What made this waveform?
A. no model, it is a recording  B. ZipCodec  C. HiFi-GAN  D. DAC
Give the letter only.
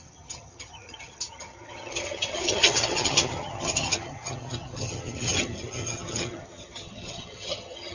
C